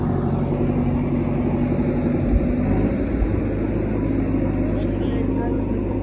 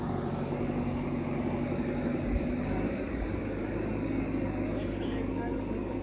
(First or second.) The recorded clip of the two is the first